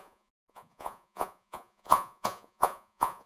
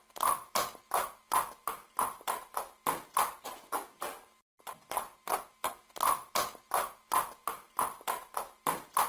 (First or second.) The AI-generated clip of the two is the first